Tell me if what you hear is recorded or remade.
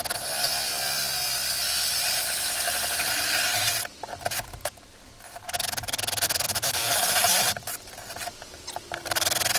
recorded